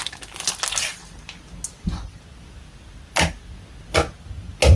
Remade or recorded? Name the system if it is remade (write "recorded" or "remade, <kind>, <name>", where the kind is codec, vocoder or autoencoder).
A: recorded